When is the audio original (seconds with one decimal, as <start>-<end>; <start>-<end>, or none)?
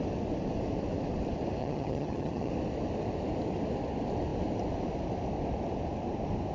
0.0-1.6; 2.5-6.5